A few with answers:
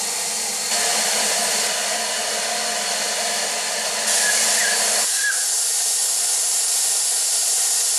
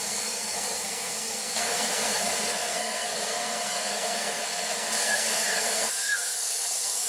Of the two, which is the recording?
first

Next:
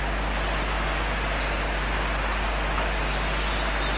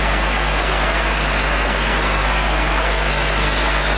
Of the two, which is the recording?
first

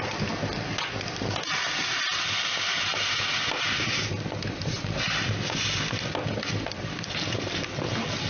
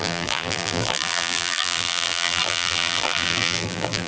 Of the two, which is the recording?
first